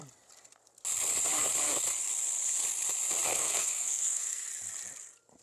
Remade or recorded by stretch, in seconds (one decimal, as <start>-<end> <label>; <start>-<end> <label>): 0.0-3.3 recorded; 3.3-4.5 remade; 4.5-5.4 recorded